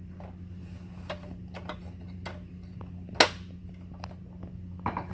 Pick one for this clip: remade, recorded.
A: recorded